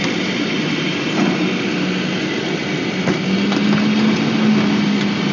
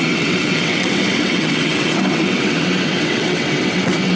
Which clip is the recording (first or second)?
first